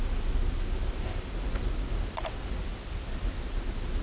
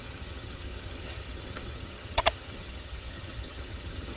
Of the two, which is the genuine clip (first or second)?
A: first